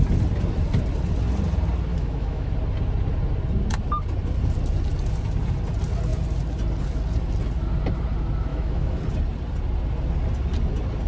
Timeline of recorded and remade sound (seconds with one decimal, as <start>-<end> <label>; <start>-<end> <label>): 0.0-1.9 recorded; 1.9-2.5 remade; 2.5-8.5 recorded; 8.5-9.0 remade; 9.0-11.1 recorded

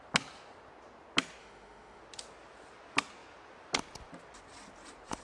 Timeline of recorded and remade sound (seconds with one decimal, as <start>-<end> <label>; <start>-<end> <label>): 0.0-1.4 recorded; 1.4-2.0 remade; 2.0-5.2 recorded

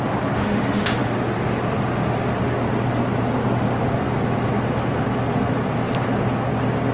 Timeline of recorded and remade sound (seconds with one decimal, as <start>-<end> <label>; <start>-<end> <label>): 0.0-0.4 recorded; 0.4-1.1 remade; 1.1-6.9 recorded

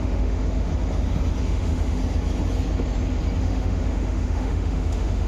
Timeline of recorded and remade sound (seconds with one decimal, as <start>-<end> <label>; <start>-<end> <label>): 0.0-0.7 remade; 0.7-1.4 recorded; 1.4-2.0 remade; 2.0-3.4 recorded; 3.4-5.3 remade

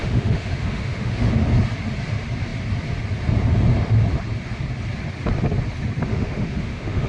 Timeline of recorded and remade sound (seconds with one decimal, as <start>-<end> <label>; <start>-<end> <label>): 0.0-1.3 remade; 1.3-6.1 recorded; 6.1-7.1 remade